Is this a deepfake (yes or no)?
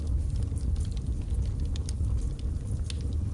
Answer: no